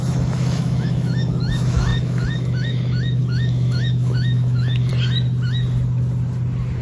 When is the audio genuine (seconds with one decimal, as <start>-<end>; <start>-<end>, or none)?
4.9-6.8